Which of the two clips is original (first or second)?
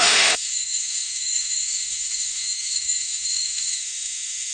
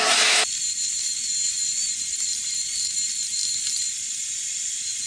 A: second